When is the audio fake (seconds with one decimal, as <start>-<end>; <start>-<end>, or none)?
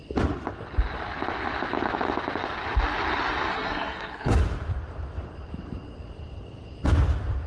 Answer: 3.5-4.4